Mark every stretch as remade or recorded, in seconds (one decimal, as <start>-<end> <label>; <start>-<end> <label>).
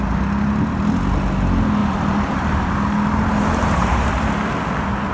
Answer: 0.0-1.8 recorded; 1.8-4.1 remade; 4.1-5.1 recorded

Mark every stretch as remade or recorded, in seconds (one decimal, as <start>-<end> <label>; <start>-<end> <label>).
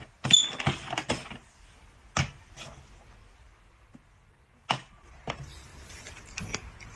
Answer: 0.0-7.0 recorded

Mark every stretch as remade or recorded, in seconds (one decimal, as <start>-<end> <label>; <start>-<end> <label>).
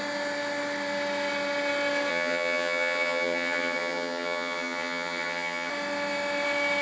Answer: 0.0-2.1 recorded; 2.1-5.7 remade; 5.7-6.8 recorded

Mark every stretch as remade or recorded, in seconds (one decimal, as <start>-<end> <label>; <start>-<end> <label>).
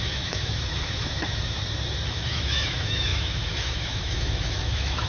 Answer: 0.0-1.6 remade; 1.6-2.1 recorded; 2.1-5.1 remade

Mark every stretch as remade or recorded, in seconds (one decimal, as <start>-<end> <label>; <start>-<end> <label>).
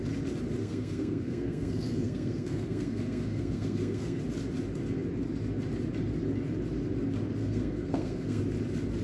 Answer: 0.0-0.6 recorded; 0.6-4.2 remade; 4.2-7.4 recorded; 7.4-8.4 remade; 8.4-9.0 recorded